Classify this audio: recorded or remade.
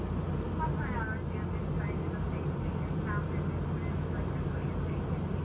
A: recorded